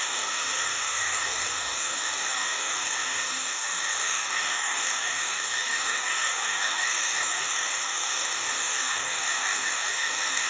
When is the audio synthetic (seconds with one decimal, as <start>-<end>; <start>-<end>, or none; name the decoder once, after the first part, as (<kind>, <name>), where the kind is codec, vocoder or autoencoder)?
0.0-10.5 (codec, DAC)